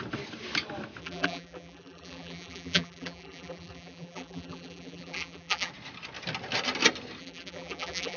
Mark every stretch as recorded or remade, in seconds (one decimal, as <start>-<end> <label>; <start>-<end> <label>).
0.0-1.0 recorded; 1.0-5.7 remade; 5.7-7.2 recorded; 7.2-8.2 remade